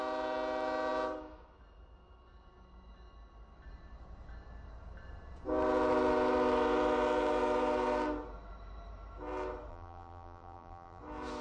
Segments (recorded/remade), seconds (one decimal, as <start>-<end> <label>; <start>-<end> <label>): 0.0-9.7 recorded; 9.7-11.0 remade; 11.0-11.4 recorded